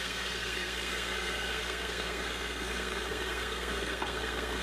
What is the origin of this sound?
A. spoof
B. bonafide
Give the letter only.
A